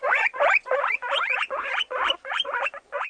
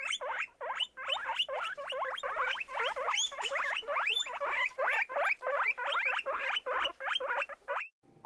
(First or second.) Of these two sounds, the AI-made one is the first